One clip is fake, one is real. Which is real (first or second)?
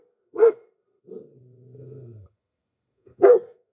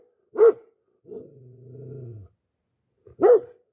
second